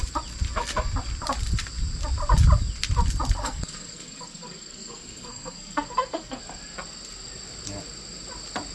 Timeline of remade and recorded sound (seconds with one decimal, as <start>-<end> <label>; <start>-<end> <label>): 0.0-3.4 recorded; 3.4-6.4 remade; 6.4-8.7 recorded